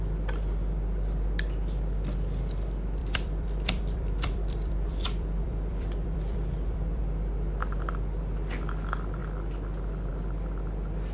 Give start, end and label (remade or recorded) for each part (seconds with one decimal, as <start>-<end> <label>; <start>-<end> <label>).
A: 0.0-3.0 recorded; 3.0-7.0 remade; 7.0-11.1 recorded